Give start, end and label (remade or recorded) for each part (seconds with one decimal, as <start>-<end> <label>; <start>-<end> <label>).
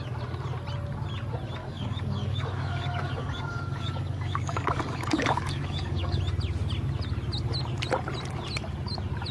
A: 0.0-1.6 recorded; 1.6-6.2 remade; 6.2-9.3 recorded